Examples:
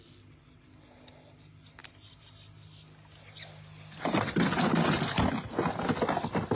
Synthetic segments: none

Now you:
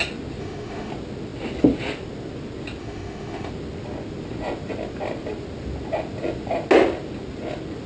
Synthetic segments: 0.4-0.9; 2.8-3.5

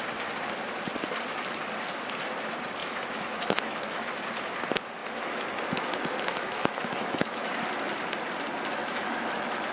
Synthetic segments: 2.8-4.1; 5.0-7.5; 8.8-9.7

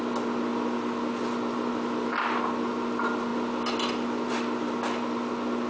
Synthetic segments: none

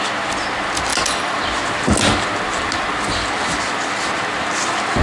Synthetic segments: none

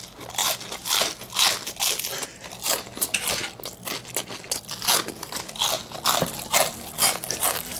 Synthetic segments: none

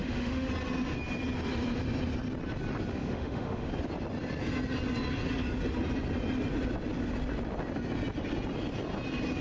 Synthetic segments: 0.0-0.5; 2.9-3.7